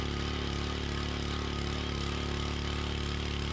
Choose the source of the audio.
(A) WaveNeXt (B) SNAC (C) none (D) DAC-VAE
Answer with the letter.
C